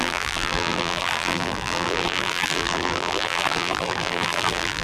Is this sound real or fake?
fake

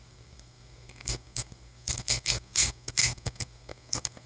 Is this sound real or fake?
fake